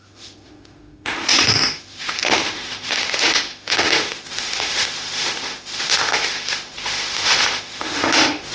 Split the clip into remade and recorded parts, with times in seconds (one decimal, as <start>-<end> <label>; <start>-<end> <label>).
0.0-8.5 remade